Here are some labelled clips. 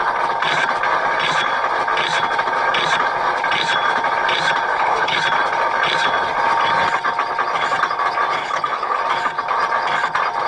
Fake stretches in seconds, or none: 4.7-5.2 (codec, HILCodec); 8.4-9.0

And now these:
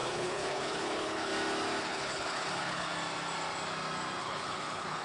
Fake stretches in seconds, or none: 0.0-1.3 (codec, HILCodec); 1.8-2.9; 4.2-5.0

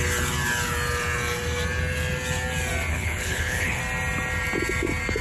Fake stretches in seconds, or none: 2.9-3.8 (codec, HILCodec)